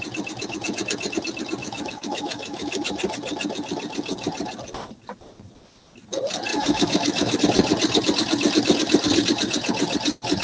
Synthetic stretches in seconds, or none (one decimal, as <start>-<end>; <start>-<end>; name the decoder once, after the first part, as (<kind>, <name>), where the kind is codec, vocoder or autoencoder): 1.6-2.7 (autoencoder, DAC-VAE); 6.5-7.4